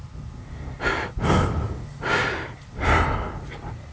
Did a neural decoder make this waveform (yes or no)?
no